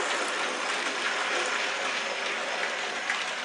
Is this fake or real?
real